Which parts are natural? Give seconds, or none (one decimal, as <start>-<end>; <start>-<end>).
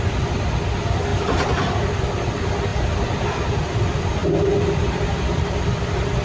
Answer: 0.0-1.1; 1.7-4.2; 5.0-6.2